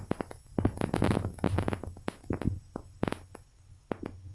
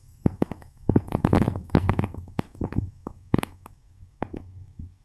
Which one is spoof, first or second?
second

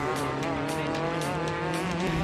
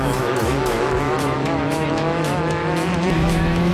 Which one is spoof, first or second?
second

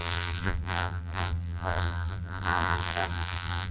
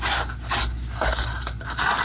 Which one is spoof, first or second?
first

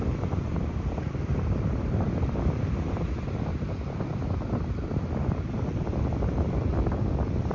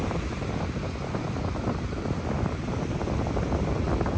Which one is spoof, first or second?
first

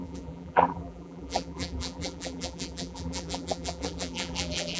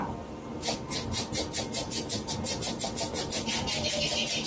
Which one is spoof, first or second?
first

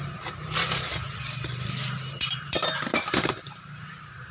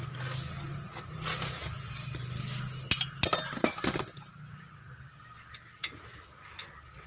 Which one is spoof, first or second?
first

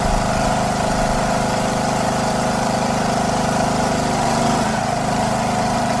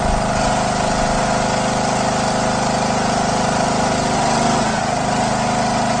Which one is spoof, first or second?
first